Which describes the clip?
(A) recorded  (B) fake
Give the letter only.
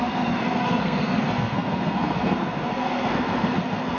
B